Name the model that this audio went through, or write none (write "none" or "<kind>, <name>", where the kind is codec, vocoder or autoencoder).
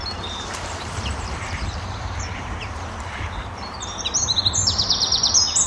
vocoder, BigVGAN v2